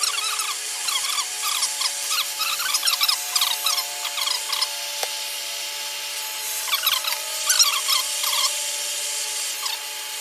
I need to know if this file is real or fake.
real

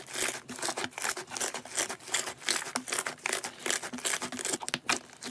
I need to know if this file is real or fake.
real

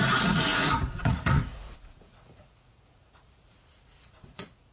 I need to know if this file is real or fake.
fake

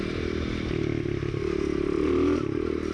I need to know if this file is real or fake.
real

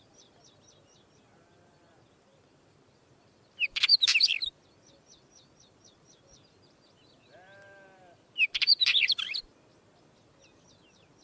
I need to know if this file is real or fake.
fake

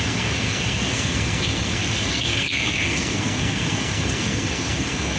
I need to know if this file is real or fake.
fake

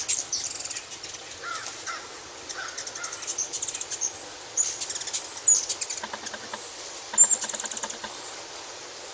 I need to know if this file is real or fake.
real